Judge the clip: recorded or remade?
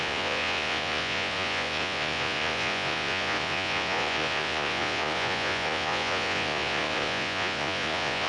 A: remade